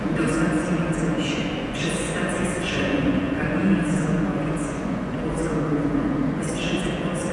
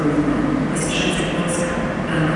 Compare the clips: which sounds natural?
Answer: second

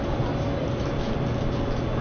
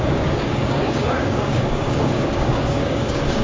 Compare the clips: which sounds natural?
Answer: first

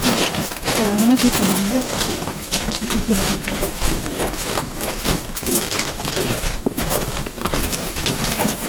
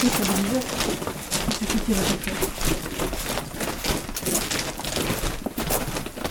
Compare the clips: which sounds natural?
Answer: second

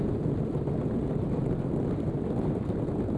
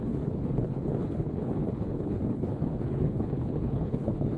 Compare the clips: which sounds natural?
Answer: first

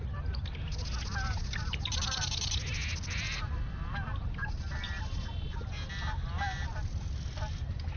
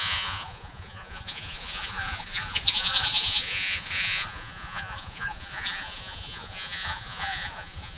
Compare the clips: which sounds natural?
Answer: first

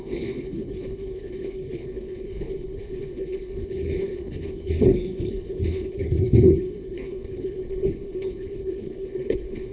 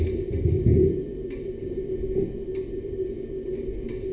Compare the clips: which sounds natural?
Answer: second